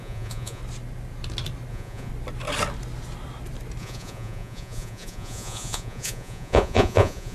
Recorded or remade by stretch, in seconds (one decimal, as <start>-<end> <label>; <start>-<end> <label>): 0.0-0.6 remade; 0.6-1.7 recorded; 1.7-2.1 remade; 2.1-3.8 recorded; 3.8-7.3 remade